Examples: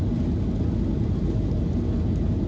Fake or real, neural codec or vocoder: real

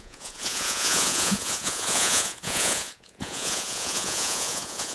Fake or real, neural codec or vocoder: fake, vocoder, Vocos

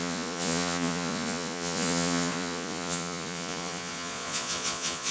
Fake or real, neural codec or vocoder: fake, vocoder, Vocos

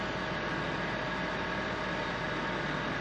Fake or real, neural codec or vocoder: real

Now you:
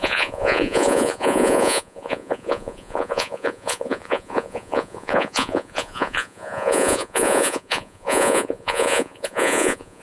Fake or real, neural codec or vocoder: fake, vocoder, Vocos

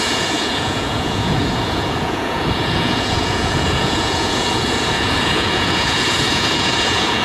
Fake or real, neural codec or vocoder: fake, vocoder, Vocos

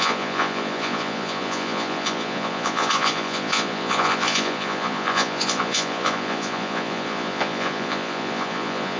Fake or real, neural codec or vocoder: fake, vocoder, Vocos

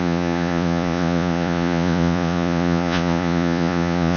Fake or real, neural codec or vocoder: fake, vocoder, Vocos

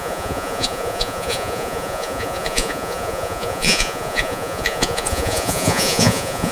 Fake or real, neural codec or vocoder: fake, vocoder, Vocos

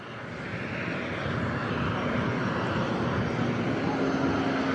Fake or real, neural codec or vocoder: real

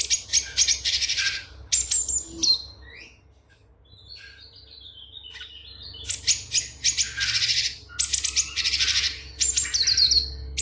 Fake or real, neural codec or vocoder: real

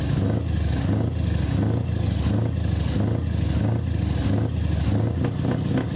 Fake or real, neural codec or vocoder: real